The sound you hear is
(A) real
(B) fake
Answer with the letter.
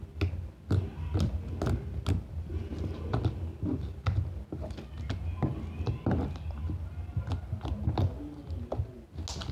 A